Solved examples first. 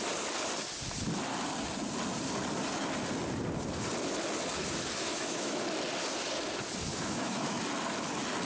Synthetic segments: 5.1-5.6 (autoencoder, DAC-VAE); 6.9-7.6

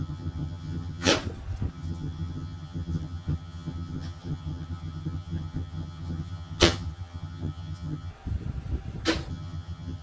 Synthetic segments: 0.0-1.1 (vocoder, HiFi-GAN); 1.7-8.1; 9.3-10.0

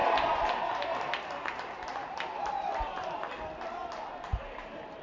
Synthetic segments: 0.0-1.0 (vocoder, BigVGAN v2); 2.0-3.3; 4.3-5.0